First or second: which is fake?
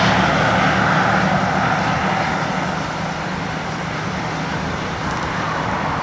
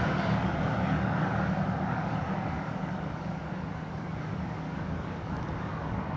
second